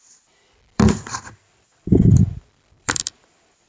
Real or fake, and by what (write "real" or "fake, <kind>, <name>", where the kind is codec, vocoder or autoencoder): fake, vocoder, BigVGAN v2